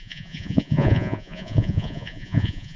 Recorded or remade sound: remade